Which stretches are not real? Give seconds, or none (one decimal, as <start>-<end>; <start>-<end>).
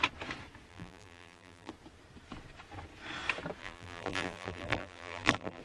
0.7-1.7; 3.6-5.6